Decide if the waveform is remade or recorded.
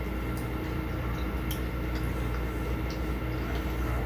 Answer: recorded